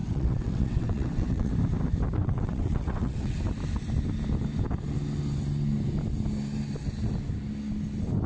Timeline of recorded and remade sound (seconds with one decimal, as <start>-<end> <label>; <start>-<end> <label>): 0.0-1.5 remade; 1.5-2.2 recorded; 2.2-3.4 remade; 3.4-8.3 recorded